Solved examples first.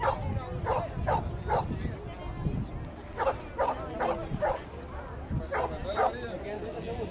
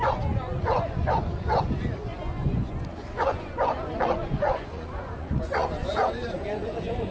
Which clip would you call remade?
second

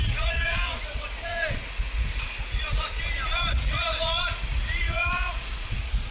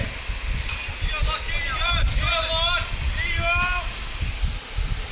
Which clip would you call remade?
first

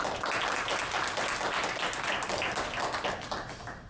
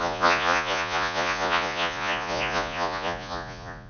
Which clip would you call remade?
second